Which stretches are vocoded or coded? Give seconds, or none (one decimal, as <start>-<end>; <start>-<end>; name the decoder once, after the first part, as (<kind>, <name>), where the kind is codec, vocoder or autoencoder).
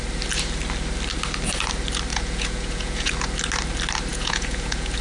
2.1-3.1 (vocoder, Vocos); 4.1-5.0